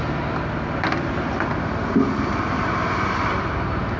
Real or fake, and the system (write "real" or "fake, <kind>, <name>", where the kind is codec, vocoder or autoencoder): real